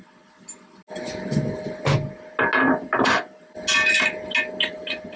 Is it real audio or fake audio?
real